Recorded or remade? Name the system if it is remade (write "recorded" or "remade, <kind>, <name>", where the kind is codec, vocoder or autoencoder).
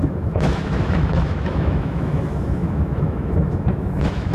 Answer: remade, autoencoder, DAC-VAE